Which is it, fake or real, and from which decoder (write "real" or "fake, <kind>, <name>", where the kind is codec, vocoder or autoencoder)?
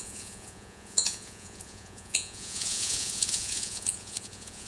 fake, vocoder, Vocos